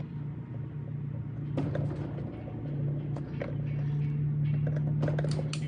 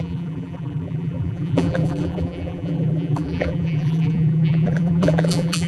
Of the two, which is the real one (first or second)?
first